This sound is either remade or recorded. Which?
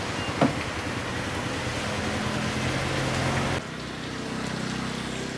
recorded